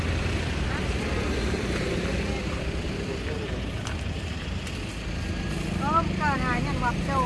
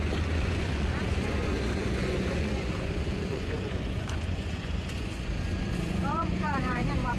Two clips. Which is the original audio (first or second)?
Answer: first